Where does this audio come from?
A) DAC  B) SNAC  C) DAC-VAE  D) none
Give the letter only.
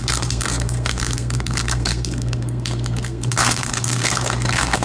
B